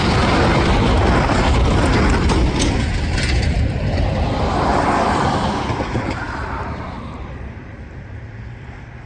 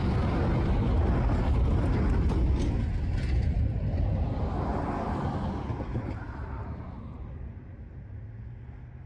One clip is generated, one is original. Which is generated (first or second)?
first